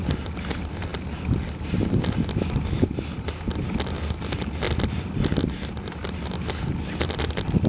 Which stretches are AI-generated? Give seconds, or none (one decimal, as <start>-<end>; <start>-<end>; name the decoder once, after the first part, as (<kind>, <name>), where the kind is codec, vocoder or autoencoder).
0.0-0.9 (vocoder, BigVGAN v2); 5.5-6.0; 6.7-7.7